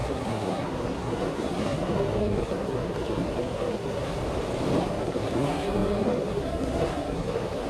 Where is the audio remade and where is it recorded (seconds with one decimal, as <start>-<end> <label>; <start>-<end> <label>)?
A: 0.0-4.2 remade; 4.2-4.8 recorded; 4.8-7.7 remade